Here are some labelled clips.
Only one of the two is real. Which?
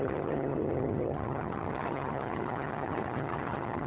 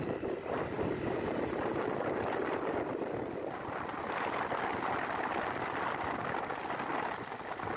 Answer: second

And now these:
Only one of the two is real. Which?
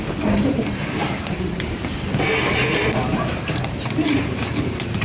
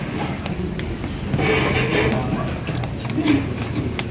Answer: second